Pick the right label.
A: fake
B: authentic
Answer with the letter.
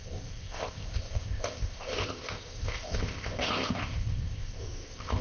A